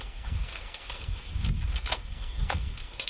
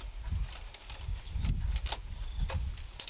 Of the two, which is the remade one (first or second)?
first